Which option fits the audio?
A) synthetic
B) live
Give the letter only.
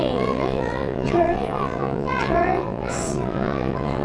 A